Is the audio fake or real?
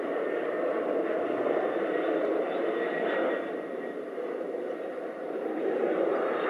real